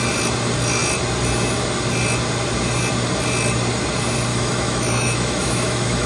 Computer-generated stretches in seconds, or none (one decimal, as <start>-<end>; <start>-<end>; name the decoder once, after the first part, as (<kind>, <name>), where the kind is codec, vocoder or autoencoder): 4.3-6.1 (autoencoder, DAC-VAE)